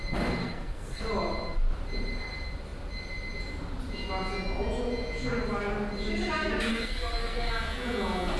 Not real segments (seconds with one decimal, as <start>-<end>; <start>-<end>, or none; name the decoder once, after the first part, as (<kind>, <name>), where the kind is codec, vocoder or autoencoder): 0.4-1.0 (codec, SNAC); 6.7-7.5